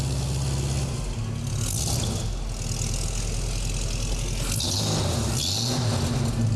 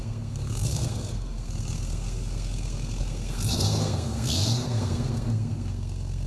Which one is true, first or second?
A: first